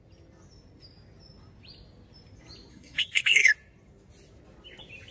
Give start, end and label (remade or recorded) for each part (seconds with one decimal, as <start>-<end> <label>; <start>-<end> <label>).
0.0-2.7 recorded; 2.7-3.5 remade; 3.5-5.1 recorded